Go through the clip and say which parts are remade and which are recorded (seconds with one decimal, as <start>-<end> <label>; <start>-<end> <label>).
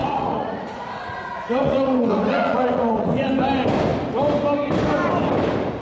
0.0-3.3 remade; 3.3-5.8 recorded